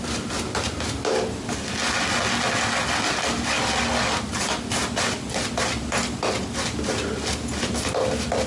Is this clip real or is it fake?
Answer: real